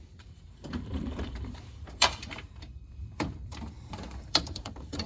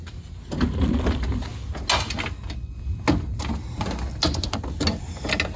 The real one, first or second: second